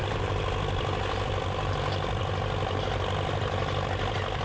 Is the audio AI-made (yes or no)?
no